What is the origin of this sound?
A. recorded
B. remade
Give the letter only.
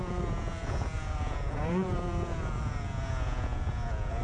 B